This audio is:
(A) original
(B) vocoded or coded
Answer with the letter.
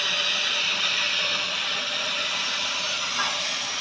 A